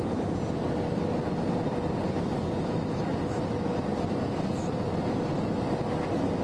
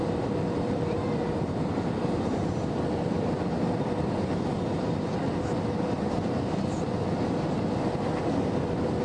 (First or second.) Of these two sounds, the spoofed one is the second